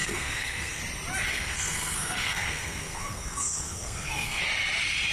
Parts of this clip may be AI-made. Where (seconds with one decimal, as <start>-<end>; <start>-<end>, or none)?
0.0-0.8; 1.3-4.4